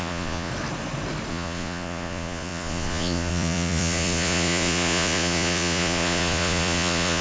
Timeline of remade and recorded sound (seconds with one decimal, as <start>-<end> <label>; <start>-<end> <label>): 0.0-0.5 remade; 0.5-1.3 recorded; 1.3-7.2 remade